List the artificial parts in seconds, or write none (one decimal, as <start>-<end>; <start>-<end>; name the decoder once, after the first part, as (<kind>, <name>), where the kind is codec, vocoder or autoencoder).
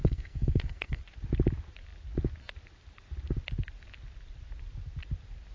0.0-1.0 (codec, SNAC)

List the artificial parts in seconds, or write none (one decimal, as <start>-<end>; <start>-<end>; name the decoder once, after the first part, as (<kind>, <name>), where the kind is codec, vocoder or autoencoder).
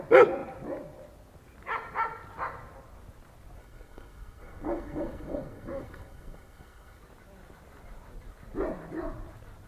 3.6-7.0 (codec, SNAC)